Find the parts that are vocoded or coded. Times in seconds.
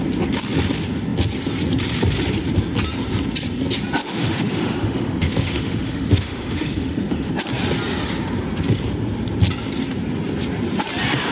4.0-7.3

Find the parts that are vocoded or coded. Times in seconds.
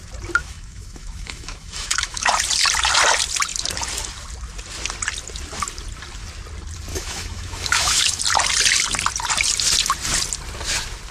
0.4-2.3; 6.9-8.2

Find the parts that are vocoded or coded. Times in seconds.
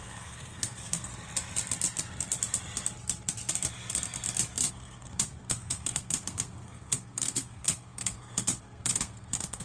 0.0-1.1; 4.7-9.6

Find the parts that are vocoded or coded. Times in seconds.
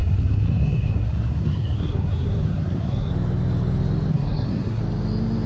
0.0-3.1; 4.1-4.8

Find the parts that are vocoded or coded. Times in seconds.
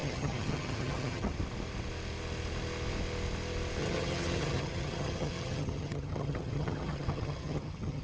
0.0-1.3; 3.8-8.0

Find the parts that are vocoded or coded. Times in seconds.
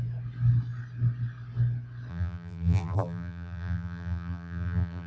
2.1-5.1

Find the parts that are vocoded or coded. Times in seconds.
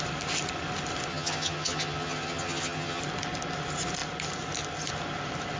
1.1-3.0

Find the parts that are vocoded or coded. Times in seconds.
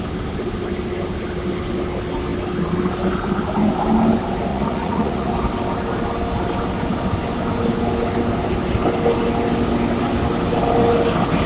4.5-5.3